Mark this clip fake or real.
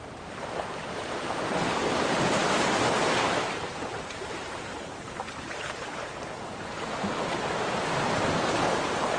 fake